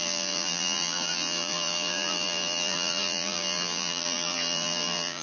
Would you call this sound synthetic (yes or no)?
yes